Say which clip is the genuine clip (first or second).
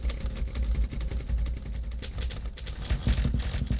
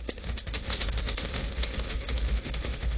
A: first